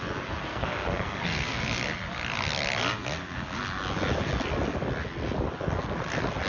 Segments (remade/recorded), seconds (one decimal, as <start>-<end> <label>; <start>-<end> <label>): 0.0-0.5 recorded; 0.5-1.6 remade; 1.6-6.5 recorded